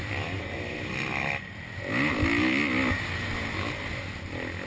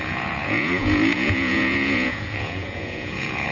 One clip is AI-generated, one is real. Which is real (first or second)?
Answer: first